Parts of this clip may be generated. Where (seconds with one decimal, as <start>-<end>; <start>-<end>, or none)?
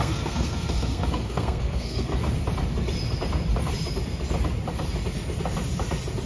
0.0-2.2